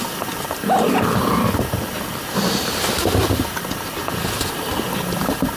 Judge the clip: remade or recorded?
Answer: recorded